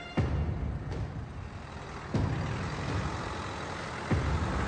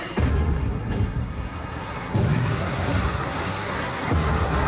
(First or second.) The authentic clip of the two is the first